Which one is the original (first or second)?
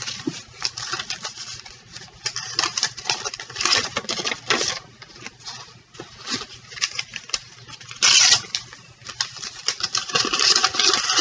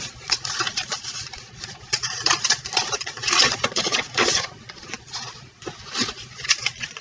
first